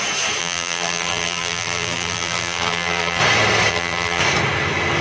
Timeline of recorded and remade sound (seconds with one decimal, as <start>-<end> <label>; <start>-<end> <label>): 0.0-0.4 recorded; 0.4-3.2 remade; 3.2-3.7 recorded; 3.7-4.2 remade; 4.2-5.0 recorded